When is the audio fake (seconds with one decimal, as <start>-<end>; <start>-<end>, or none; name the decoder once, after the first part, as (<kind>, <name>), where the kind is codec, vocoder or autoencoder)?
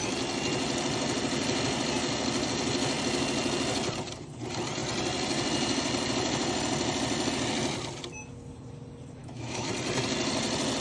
9.2-9.7 (autoencoder, DAC-VAE)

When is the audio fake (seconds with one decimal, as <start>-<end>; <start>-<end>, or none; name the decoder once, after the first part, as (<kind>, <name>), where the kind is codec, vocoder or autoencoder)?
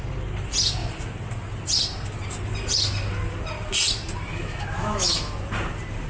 4.3-5.3 (autoencoder, DAC-VAE)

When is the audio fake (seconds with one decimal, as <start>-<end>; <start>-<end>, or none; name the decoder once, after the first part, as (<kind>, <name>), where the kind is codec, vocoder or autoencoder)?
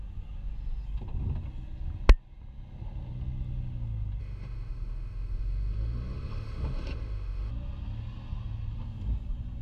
4.2-7.5 (autoencoder, DAC-VAE)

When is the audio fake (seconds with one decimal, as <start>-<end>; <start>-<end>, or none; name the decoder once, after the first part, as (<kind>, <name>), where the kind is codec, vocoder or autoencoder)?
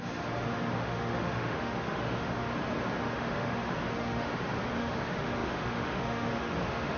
0.0-2.5 (autoencoder, DAC-VAE); 3.0-4.3; 4.8-7.0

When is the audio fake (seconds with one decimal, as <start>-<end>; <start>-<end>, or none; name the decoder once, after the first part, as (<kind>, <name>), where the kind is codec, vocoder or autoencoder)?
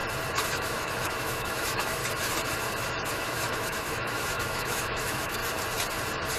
0.5-2.0 (autoencoder, DAC-VAE); 3.1-5.4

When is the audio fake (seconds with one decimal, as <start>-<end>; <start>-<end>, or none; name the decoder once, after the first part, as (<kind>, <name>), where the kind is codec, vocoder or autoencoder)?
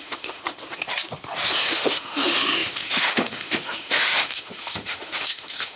0.0-0.4 (autoencoder, DAC-VAE); 1.7-5.8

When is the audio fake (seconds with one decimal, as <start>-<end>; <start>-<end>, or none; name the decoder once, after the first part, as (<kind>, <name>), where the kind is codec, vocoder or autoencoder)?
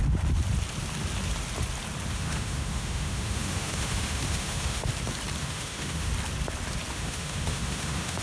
2.1-4.9 (autoencoder, DAC-VAE); 5.4-6.1; 6.9-8.2